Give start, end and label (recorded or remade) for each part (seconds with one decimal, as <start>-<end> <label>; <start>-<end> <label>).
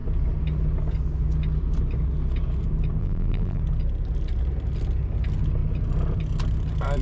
0.0-3.0 recorded; 3.0-3.6 remade; 3.6-7.0 recorded